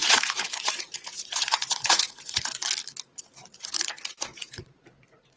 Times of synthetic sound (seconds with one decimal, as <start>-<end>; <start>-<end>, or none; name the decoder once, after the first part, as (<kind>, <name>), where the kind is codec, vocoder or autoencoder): 0.0-2.6 (vocoder, Vocos); 3.5-5.4